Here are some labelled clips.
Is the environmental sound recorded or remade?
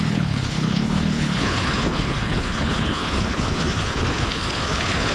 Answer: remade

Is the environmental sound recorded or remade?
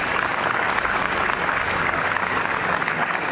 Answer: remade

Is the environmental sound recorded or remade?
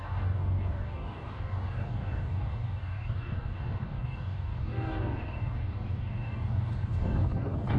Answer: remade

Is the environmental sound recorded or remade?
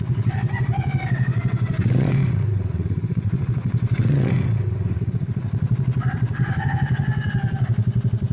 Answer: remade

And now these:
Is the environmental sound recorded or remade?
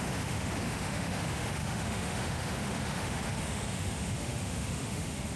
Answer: remade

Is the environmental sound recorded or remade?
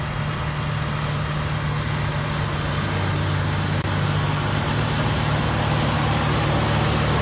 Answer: recorded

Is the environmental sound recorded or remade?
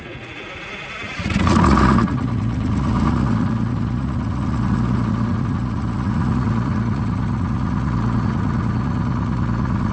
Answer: remade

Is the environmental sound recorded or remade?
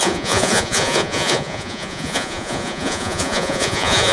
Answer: remade